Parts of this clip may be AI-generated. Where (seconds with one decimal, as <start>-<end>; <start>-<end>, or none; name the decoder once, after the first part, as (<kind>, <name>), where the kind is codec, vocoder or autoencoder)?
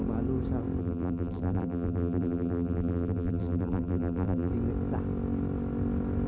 0.8-4.5 (vocoder, BigVGAN v2)